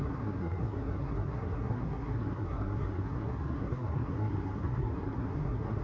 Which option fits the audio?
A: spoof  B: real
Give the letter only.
A